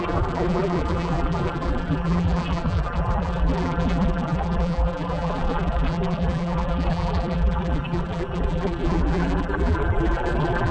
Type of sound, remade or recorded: remade